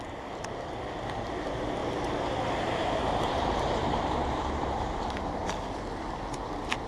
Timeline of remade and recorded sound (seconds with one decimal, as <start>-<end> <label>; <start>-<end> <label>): 0.0-1.8 recorded; 1.8-5.5 remade; 5.5-6.9 recorded